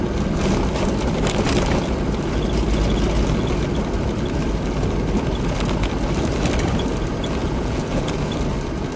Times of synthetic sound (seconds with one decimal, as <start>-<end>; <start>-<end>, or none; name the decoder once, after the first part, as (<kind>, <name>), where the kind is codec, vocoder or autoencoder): 7.4-8.3 (vocoder, Vocos)